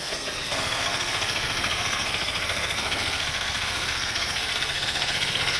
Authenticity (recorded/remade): remade